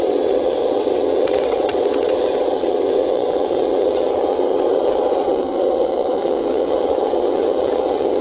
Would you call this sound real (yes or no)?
no